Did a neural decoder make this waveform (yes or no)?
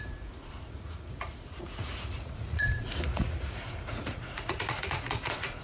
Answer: yes